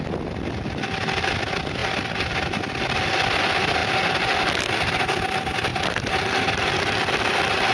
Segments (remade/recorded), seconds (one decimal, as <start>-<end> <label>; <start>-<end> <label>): 0.0-7.7 recorded